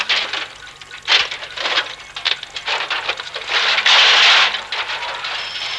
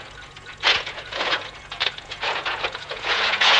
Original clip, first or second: first